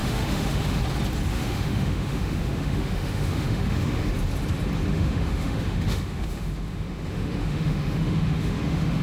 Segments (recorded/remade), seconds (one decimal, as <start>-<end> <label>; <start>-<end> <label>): 0.0-0.8 remade; 0.8-1.3 recorded; 1.3-4.1 remade; 4.1-4.9 recorded; 4.9-9.0 remade